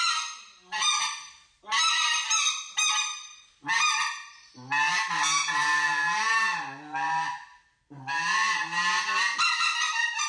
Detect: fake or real real